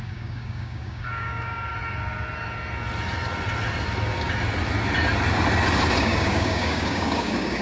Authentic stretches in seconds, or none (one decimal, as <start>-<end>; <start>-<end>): 1.7-6.0

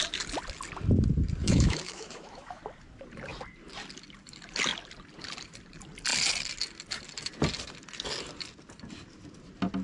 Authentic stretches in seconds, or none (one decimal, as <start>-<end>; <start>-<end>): 0.0-1.4; 2.6-9.8

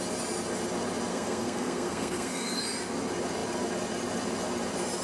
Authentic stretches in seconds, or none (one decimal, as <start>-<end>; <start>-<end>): 0.0-1.1; 2.6-5.0

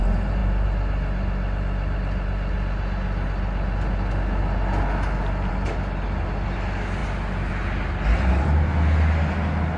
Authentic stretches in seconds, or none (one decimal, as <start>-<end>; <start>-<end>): 0.0-9.8

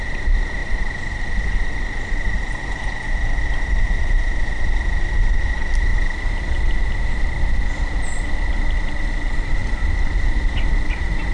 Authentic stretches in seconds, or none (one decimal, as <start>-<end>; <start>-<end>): 0.0-5.9; 6.7-11.3